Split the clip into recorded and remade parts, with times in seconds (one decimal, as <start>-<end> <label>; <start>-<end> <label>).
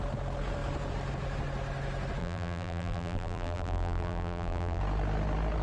0.0-2.2 recorded; 2.2-4.8 remade; 4.8-5.6 recorded